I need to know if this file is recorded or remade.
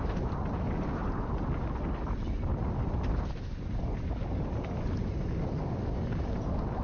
recorded